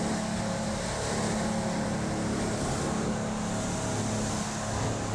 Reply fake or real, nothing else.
real